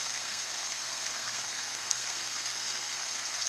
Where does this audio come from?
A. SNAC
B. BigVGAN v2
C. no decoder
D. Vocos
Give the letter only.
A